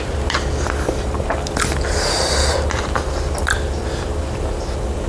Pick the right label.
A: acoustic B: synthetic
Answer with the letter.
A